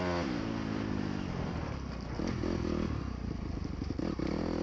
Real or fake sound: real